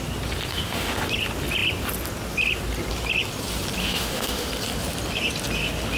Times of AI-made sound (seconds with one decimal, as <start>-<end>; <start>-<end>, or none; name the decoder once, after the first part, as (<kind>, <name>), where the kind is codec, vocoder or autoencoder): 0.5-1.0 (autoencoder, DAC-VAE); 3.8-4.5